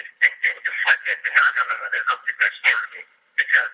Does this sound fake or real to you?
fake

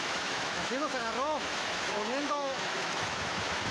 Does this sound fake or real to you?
fake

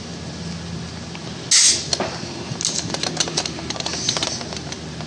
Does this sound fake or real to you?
real